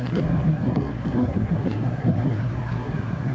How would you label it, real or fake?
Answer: fake